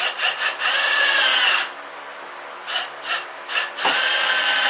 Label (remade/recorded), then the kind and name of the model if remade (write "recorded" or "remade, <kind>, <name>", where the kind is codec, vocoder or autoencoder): recorded